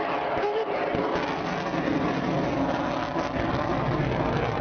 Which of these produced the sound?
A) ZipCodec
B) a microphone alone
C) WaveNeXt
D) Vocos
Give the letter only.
B